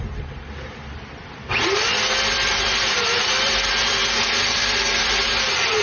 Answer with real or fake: fake